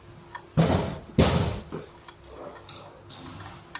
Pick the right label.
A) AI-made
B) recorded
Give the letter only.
B